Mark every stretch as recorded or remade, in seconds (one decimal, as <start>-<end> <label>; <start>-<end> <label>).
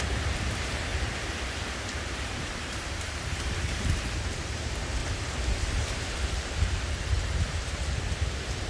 0.0-0.9 remade; 0.9-1.6 recorded; 1.6-5.0 remade; 5.0-5.7 recorded; 5.7-8.7 remade